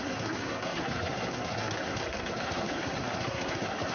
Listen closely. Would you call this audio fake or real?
fake